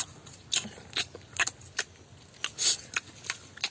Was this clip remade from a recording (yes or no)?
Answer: no